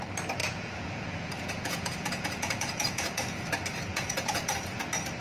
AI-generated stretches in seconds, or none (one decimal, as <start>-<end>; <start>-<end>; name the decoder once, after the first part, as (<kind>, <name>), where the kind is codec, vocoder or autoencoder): 0.4-3.5 (vocoder, Vocos); 3.9-4.8